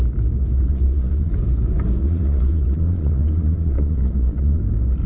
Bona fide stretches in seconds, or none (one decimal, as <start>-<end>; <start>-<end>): 0.0-0.7; 1.3-2.0; 4.6-5.1